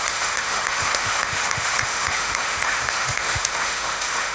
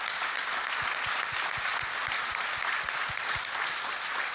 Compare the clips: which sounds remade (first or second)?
first